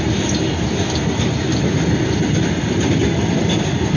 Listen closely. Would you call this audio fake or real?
real